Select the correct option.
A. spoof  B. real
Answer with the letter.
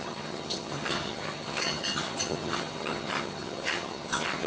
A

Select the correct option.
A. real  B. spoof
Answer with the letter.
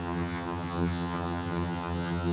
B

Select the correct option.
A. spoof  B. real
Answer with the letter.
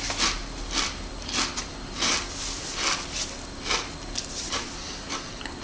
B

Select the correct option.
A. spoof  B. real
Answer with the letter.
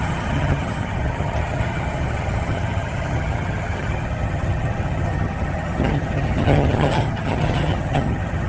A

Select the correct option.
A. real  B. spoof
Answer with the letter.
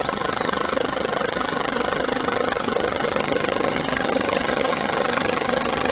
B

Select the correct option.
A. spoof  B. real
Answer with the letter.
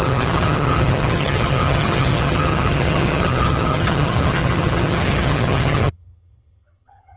A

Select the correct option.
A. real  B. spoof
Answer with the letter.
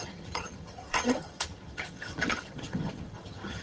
B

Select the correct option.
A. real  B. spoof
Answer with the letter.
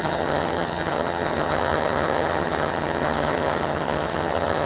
B